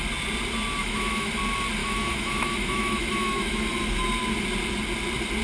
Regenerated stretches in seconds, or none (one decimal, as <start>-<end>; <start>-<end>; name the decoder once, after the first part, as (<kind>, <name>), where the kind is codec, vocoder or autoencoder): 0.8-1.3 (autoencoder, DAC-VAE); 1.8-3.6